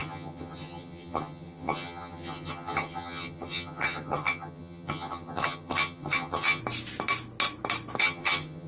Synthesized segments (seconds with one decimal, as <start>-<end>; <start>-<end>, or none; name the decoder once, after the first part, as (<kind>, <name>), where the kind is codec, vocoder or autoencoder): 0.0-6.6 (vocoder, HiFi-GAN); 8.0-8.7